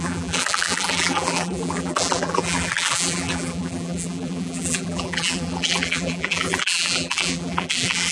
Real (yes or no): no